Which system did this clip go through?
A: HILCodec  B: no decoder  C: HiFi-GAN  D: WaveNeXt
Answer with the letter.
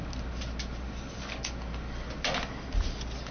B